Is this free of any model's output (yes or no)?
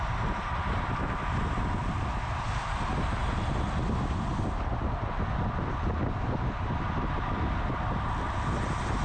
yes